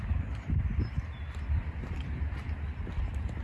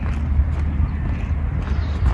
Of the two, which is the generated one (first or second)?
first